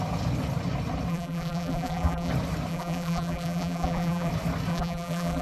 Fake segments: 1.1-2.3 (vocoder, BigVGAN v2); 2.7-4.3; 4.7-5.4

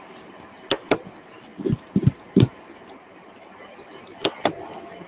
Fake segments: none

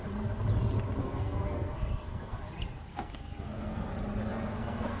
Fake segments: 1.0-2.4 (codec, SNAC); 2.9-3.9; 4.3-5.0

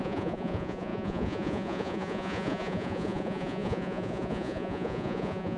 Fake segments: 0.0-5.6 (vocoder, Vocos)

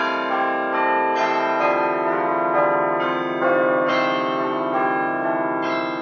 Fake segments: none

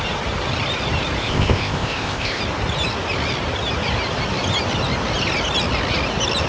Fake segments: 1.2-2.4 (codec, ZipCodec)

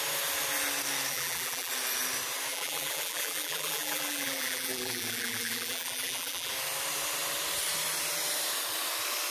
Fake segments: 1.1-1.7 (vocoder, BigVGAN v2); 2.5-6.5

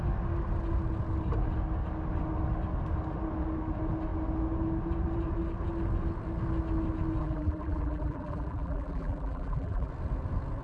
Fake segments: 7.2-9.9 (vocoder, BigVGAN v2)